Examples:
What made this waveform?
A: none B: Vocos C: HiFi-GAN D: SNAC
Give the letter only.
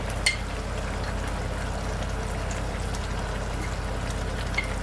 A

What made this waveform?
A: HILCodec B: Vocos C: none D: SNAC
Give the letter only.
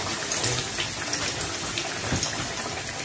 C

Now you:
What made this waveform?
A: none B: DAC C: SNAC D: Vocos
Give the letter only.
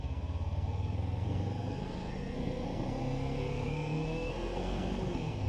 C